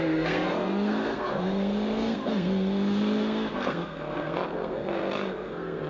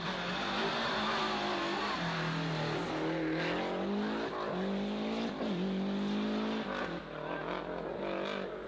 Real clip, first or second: second